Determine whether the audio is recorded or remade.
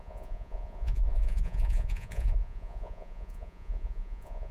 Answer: remade